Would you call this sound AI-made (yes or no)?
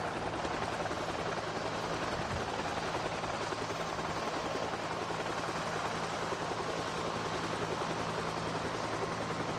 no